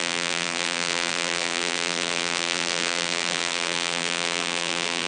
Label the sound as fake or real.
fake